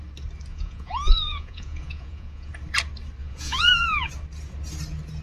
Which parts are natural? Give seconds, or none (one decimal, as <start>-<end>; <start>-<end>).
0.0-0.5; 2.5-3.2; 4.1-5.2